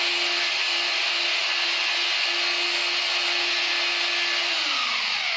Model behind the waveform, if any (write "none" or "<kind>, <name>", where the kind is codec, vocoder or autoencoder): none